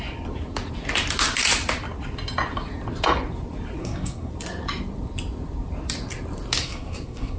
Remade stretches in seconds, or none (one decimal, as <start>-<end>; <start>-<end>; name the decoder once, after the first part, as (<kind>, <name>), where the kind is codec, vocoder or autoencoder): 3.8-4.3 (codec, SNAC); 6.6-7.4